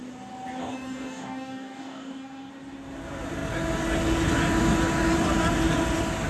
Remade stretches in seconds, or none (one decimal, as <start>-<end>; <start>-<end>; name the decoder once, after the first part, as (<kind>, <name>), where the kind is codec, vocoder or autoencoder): 0.6-2.5 (codec, DAC)